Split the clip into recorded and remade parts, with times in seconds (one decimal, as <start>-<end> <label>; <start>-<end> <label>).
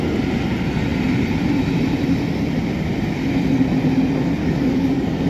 0.0-4.4 recorded; 4.4-5.3 remade